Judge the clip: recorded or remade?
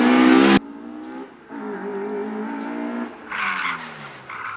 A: recorded